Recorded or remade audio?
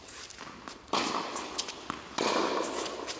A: recorded